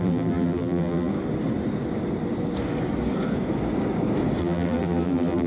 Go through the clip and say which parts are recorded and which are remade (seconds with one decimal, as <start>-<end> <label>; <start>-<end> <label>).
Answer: 0.0-1.1 remade; 1.1-4.4 recorded; 4.4-5.5 remade